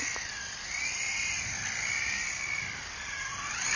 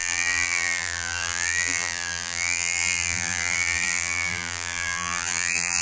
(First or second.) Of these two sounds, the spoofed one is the second